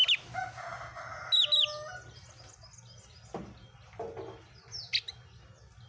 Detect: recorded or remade recorded